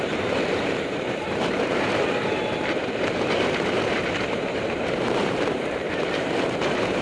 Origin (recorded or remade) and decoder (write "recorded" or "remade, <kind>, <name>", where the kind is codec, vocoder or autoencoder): remade, vocoder, BigVGAN v2